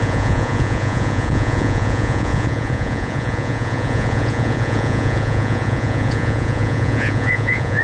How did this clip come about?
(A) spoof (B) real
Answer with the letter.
A